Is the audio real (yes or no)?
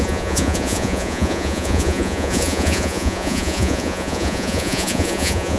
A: no